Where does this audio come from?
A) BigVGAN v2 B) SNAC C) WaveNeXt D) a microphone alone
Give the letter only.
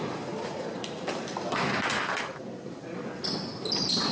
A